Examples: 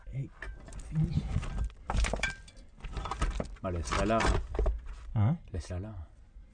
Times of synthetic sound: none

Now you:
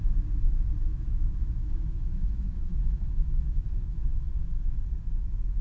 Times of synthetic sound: 0.9-4.3

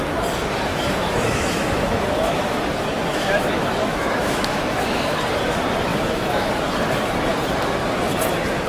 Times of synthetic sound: 0.7-2.6; 3.1-5.1; 5.9-6.5

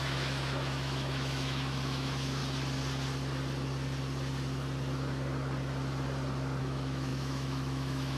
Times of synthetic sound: 0.0-2.4; 6.6-8.2

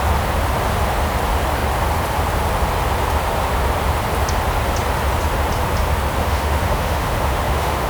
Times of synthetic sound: 6.2-7.9

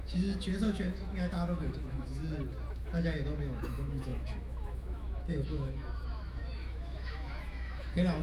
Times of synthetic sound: 0.0-2.2; 2.7-8.2

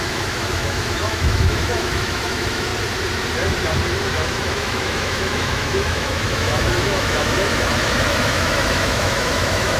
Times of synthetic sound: 0.0-2.7; 4.1-9.8

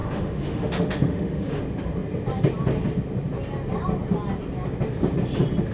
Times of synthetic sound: 0.0-1.6